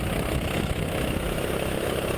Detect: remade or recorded remade